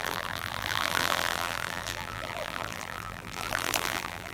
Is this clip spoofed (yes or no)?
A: yes